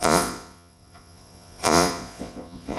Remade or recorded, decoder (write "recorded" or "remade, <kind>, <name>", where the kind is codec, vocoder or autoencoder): remade, vocoder, Vocos